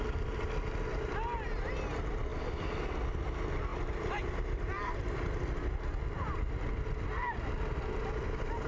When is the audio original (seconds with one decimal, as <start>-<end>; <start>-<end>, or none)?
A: 0.0-8.7